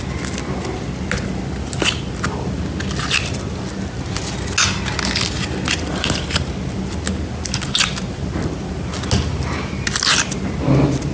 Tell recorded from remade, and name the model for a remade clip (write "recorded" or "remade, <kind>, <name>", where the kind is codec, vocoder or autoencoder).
recorded